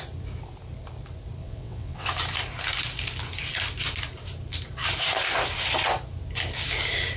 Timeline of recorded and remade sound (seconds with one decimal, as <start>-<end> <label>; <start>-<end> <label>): 0.0-1.4 recorded; 1.4-2.1 remade; 2.1-7.2 recorded